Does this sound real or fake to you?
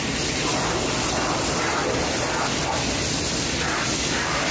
real